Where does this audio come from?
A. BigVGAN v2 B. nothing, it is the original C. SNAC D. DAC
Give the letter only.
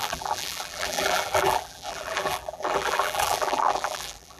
A